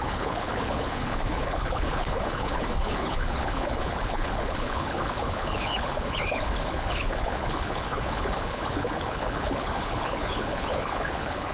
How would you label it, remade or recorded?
remade